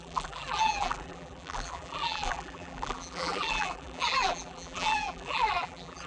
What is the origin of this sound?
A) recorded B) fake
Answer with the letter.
B